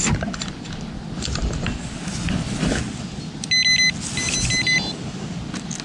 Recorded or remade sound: recorded